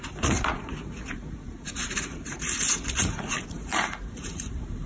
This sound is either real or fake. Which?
fake